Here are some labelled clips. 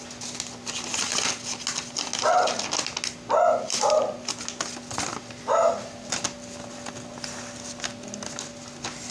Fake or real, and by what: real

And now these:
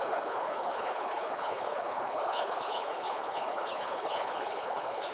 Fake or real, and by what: fake, codec, HILCodec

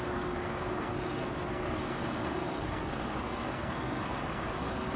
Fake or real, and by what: fake, codec, SNAC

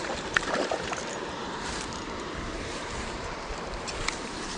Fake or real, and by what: fake, vocoder, BigVGAN v2